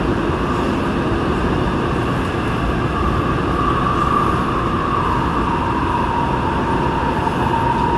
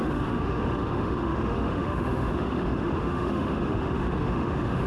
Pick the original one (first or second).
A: first